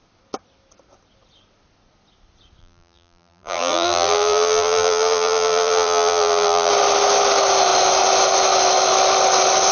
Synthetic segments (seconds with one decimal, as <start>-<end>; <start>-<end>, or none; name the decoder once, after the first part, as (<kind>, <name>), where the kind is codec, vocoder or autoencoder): 2.6-6.7 (vocoder, BigVGAN v2)